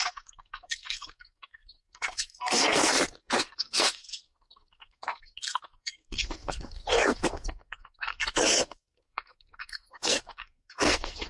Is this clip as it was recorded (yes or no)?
no